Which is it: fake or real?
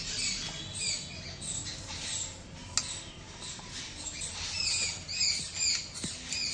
real